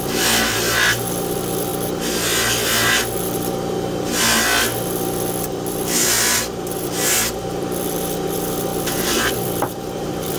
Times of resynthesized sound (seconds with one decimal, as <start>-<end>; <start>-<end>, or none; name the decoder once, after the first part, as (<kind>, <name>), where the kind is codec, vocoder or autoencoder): 0.0-1.7 (vocoder, BigVGAN v2); 5.5-10.4